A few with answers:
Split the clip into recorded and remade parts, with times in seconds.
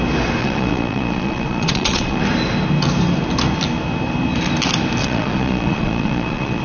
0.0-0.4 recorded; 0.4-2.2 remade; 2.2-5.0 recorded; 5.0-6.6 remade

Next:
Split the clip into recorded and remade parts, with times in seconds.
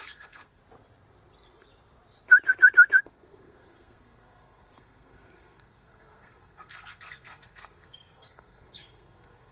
0.0-0.6 remade; 0.6-3.0 recorded; 3.0-9.5 remade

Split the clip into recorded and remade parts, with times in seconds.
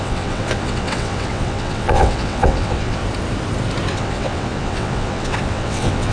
0.0-3.0 remade; 3.0-3.9 recorded; 3.9-6.1 remade